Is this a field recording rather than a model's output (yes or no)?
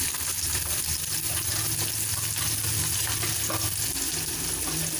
yes